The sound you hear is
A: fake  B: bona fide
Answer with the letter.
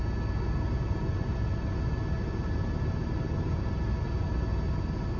B